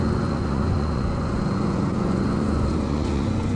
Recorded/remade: remade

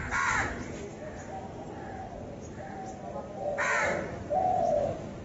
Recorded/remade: remade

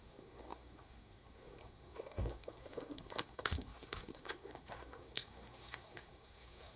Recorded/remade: remade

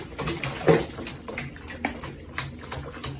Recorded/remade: recorded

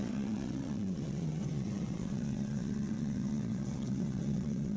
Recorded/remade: remade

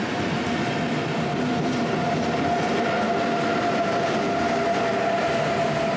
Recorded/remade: recorded